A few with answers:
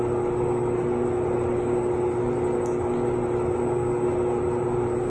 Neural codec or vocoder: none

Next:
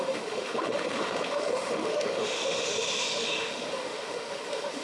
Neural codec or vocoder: autoencoder, DAC-VAE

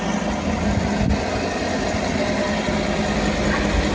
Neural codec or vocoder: none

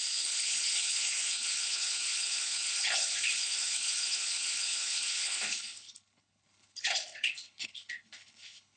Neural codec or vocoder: codec, HILCodec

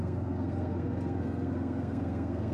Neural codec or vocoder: codec, SNAC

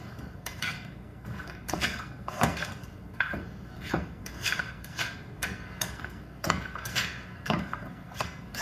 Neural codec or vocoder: codec, SNAC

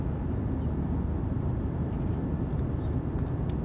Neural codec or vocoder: none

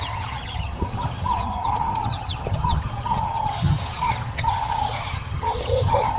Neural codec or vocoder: vocoder, HiFi-GAN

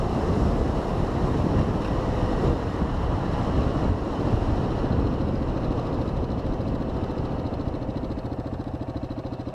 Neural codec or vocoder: none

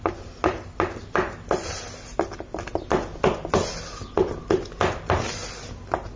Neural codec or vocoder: none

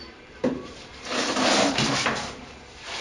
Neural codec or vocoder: vocoder, BigVGAN v2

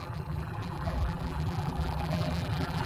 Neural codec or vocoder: vocoder, BigVGAN v2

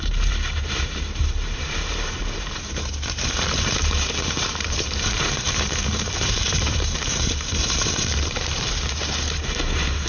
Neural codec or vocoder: vocoder, BigVGAN v2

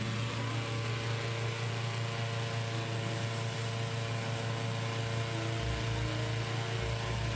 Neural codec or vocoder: none